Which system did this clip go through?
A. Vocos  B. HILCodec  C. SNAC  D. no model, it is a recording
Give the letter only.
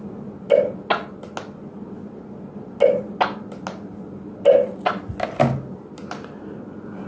D